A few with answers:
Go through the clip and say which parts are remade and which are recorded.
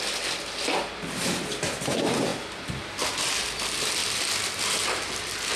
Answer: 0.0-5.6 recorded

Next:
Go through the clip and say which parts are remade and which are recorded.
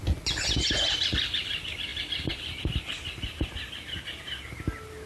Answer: 0.0-5.1 recorded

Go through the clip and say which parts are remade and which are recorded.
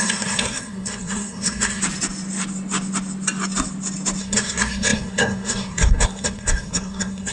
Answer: 0.0-1.8 remade; 1.8-4.2 recorded; 4.2-7.3 remade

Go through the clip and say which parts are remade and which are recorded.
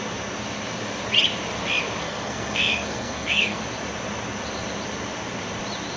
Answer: 0.0-2.0 recorded; 2.0-3.6 remade; 3.6-6.0 recorded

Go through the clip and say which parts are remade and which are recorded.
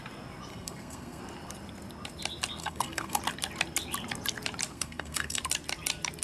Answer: 0.0-0.5 recorded; 0.5-1.2 remade; 1.2-2.6 recorded; 2.6-3.2 remade; 3.2-4.7 recorded; 4.7-5.4 remade; 5.4-6.2 recorded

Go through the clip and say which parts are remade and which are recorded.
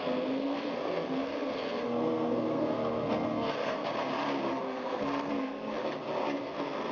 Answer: 0.0-3.9 remade; 3.9-4.5 recorded; 4.5-5.8 remade; 5.8-6.4 recorded; 6.4-6.9 remade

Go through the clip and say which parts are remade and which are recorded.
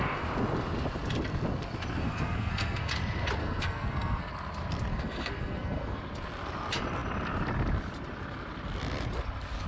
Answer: 0.0-2.0 recorded; 2.0-2.9 remade; 2.9-3.4 recorded; 3.4-4.3 remade; 4.3-4.9 recorded; 4.9-6.0 remade; 6.0-9.7 recorded